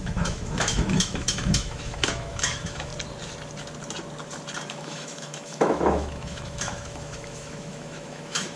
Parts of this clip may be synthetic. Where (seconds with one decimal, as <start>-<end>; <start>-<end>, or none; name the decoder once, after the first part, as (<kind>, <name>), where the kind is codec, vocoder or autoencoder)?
0.0-2.9 (autoencoder, DAC-VAE); 4.7-8.6

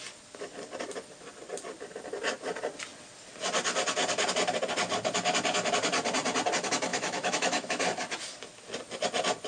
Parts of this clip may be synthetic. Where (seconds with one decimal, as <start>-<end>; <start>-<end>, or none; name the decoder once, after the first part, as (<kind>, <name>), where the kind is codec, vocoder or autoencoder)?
6.9-7.8 (autoencoder, DAC-VAE)

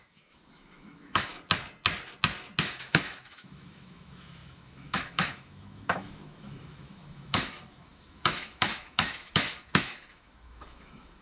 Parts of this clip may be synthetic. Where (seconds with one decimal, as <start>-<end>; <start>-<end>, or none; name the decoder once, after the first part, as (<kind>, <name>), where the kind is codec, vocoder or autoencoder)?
0.0-1.3 (autoencoder, DAC-VAE); 2.6-11.2

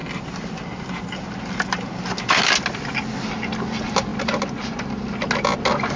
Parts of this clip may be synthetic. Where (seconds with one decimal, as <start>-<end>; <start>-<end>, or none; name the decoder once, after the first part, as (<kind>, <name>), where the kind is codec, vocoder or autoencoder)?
none

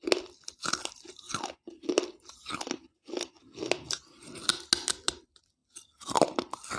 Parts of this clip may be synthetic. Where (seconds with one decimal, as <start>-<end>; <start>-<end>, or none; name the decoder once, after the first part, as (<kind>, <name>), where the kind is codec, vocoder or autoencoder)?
none

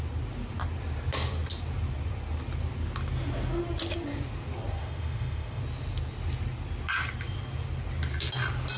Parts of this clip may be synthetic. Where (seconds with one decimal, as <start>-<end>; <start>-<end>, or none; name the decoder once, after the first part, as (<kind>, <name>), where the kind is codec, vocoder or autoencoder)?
4.8-5.6 (autoencoder, DAC-VAE)